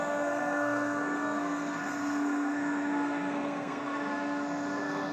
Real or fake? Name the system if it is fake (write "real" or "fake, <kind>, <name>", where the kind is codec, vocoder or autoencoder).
fake, codec, SNAC